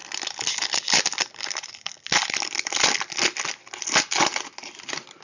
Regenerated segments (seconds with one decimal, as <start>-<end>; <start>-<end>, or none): none